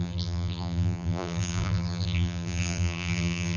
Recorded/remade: remade